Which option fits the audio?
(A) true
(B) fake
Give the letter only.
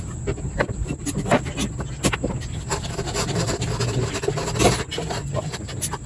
A